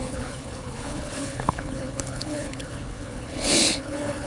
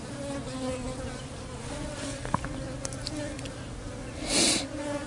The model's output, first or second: first